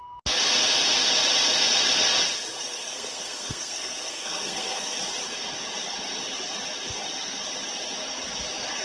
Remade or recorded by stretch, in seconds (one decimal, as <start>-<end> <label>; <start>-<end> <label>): 0.0-2.6 recorded; 2.6-5.0 remade; 5.0-8.8 recorded